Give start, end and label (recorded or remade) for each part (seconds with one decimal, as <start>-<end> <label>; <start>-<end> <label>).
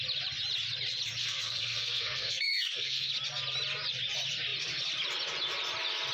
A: 0.0-1.2 recorded; 1.2-3.1 remade; 3.1-6.1 recorded